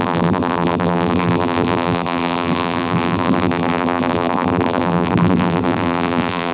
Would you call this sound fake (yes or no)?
yes